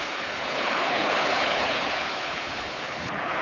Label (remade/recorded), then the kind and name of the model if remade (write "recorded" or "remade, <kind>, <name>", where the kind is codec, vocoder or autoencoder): remade, codec, HILCodec